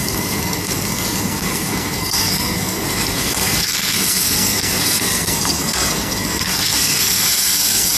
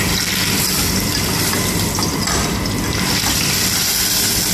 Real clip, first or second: second